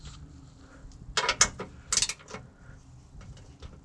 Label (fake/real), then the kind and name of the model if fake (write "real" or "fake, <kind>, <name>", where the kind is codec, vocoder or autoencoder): real